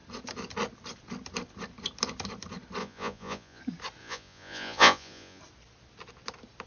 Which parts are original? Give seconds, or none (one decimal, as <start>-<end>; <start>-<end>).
0.0-2.8; 3.6-4.0; 5.4-6.7